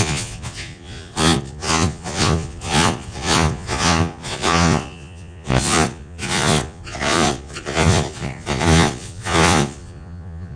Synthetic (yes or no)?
yes